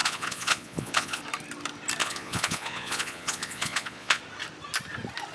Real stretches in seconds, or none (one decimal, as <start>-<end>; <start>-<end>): 1.2-2.0; 4.2-5.3